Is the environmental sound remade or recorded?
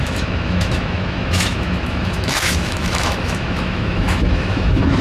remade